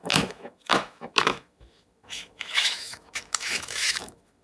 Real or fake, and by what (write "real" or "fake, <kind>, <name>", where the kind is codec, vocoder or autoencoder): fake, autoencoder, DAC-VAE